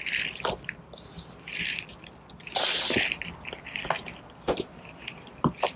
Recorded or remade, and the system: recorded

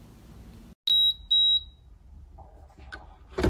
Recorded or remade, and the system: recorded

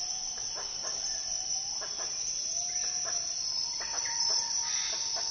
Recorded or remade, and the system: recorded